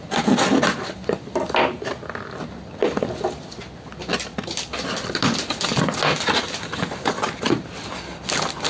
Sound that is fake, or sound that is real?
real